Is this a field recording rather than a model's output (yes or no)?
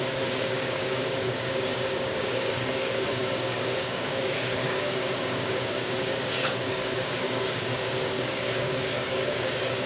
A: no